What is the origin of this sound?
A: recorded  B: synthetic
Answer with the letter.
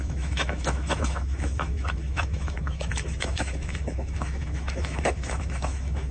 B